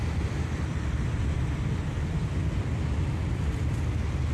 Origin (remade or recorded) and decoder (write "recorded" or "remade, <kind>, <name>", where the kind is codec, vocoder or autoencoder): recorded